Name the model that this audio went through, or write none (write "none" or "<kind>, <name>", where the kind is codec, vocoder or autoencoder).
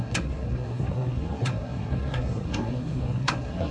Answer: codec, SNAC